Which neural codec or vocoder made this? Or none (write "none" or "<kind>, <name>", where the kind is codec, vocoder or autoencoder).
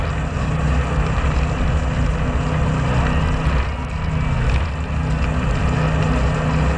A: none